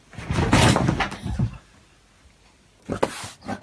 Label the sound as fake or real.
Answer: real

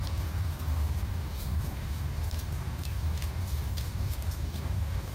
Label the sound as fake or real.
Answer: fake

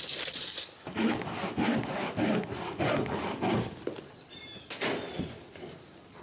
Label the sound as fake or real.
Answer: real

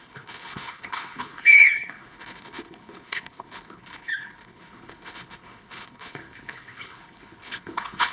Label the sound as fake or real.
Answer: fake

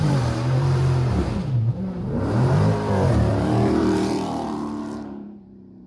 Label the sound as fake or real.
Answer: fake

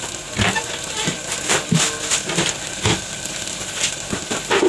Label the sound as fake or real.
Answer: real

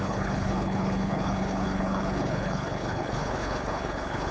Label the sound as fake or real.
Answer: fake